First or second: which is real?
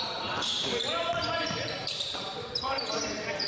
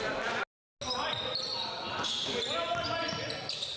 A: second